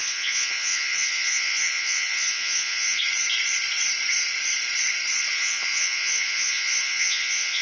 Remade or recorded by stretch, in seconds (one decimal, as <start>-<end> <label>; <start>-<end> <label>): 0.0-3.0 remade; 3.0-5.3 recorded; 5.3-7.6 remade